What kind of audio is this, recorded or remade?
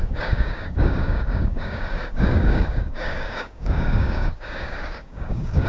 remade